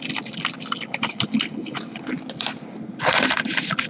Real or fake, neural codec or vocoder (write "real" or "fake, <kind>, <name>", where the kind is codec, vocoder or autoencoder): real